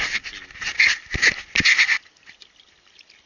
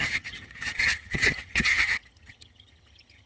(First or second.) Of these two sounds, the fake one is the second